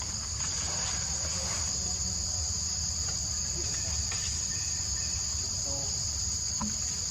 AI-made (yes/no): no